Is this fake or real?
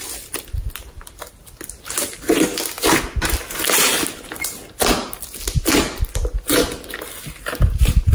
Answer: real